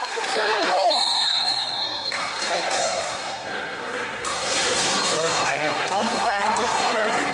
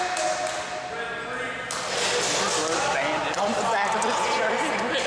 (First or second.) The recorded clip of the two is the second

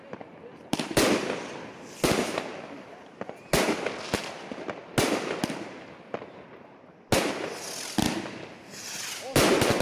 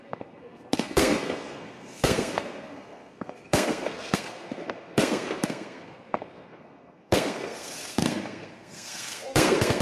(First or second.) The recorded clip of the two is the first